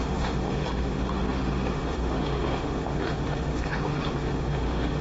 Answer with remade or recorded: remade